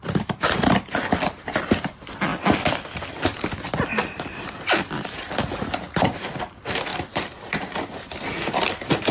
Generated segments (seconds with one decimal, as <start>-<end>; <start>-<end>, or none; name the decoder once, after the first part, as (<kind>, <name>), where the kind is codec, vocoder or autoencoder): none